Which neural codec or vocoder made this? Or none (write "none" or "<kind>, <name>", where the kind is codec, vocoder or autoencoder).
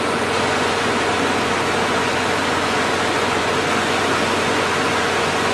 vocoder, Vocos